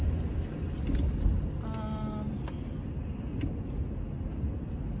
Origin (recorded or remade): recorded